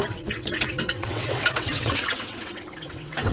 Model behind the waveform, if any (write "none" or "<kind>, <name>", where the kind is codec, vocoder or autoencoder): vocoder, WaveNeXt